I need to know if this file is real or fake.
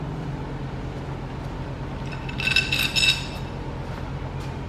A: real